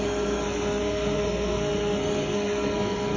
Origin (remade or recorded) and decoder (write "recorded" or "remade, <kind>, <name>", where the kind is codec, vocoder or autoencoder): remade, codec, SNAC